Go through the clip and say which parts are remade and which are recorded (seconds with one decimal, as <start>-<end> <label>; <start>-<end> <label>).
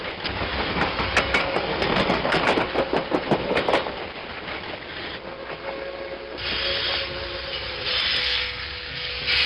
0.0-1.4 recorded; 1.4-2.4 remade; 2.4-8.2 recorded; 8.2-9.1 remade; 9.1-9.5 recorded